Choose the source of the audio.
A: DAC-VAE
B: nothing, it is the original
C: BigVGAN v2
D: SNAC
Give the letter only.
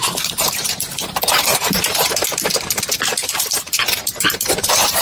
C